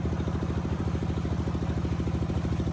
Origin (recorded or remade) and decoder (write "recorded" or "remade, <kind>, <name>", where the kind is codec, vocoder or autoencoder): recorded